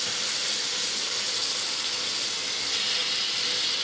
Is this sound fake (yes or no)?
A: no